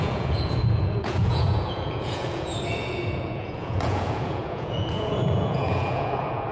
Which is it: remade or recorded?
remade